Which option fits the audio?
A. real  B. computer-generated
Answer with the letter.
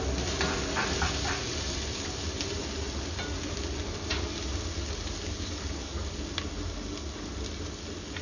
A